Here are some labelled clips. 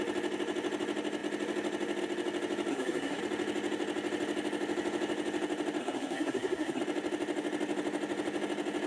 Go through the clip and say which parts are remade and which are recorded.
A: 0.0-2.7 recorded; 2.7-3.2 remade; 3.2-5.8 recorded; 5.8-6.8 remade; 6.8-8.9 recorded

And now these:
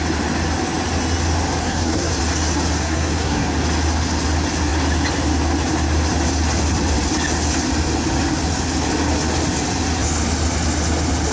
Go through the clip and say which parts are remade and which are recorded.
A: 0.0-1.6 recorded; 1.6-2.1 remade; 2.1-2.8 recorded; 2.8-3.5 remade; 3.5-11.3 recorded

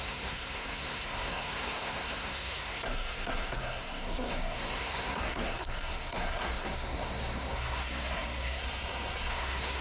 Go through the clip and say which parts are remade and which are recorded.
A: 0.0-8.6 remade; 8.6-9.3 recorded; 9.3-9.8 remade

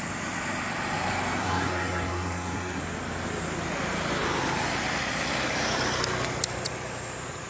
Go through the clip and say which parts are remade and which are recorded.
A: 0.0-1.4 recorded; 1.4-2.8 remade; 2.8-7.5 recorded

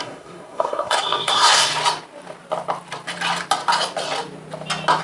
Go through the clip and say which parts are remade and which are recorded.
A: 0.0-1.7 remade; 1.7-5.0 recorded